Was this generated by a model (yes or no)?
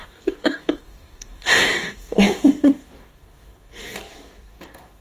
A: yes